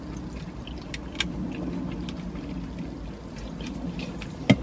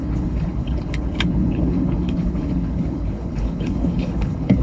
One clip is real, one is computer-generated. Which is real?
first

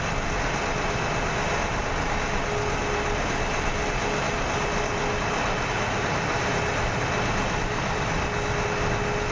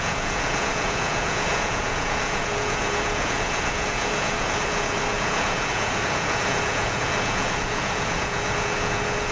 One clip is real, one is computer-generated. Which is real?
first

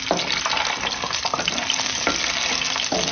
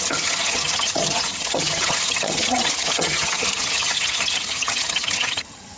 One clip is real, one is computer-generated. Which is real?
first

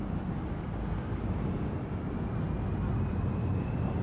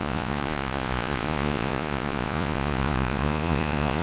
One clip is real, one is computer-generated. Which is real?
first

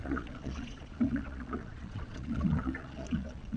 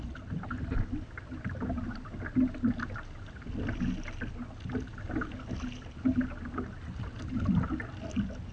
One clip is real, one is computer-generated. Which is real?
second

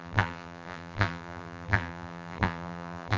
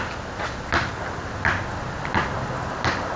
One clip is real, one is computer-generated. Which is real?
second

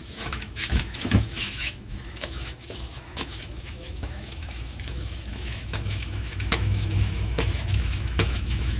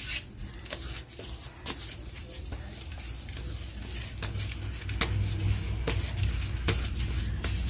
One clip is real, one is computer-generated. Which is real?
second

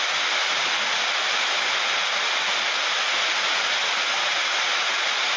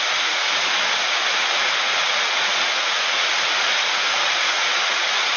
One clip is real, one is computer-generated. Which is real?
first